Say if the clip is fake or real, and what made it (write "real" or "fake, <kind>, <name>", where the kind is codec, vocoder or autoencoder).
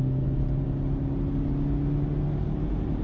real